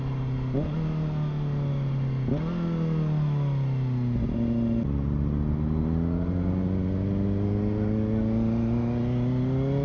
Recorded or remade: recorded